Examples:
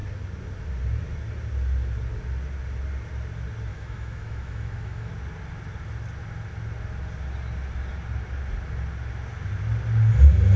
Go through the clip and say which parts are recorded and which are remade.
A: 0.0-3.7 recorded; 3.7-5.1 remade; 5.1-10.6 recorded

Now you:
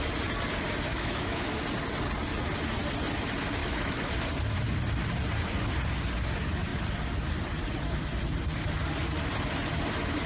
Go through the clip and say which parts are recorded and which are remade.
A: 0.0-0.9 recorded; 0.9-1.6 remade; 1.6-3.6 recorded; 3.6-4.1 remade; 4.1-10.3 recorded